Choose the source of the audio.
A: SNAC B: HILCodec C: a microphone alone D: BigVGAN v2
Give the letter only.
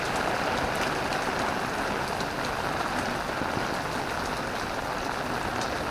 C